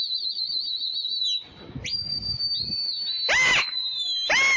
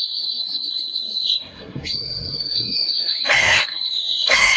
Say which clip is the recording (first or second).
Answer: first